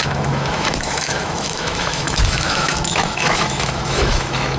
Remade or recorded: remade